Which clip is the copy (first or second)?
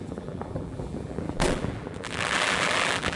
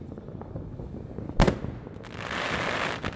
first